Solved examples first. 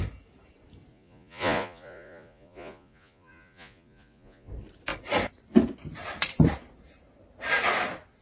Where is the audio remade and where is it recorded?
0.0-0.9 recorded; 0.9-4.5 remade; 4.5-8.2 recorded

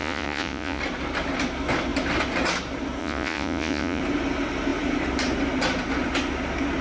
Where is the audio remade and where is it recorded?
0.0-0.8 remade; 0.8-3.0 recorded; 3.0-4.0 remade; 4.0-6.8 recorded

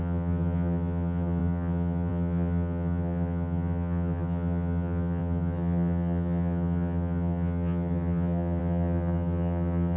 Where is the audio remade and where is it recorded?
0.0-10.0 remade

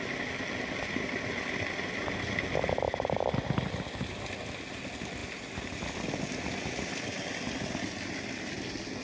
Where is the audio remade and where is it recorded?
0.0-9.0 recorded

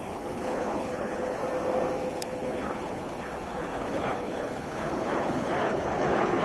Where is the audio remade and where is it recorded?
0.0-1.4 remade; 1.4-2.1 recorded; 2.1-6.4 remade

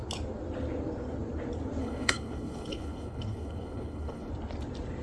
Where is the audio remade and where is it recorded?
0.0-1.8 recorded; 1.8-4.3 remade; 4.3-5.0 recorded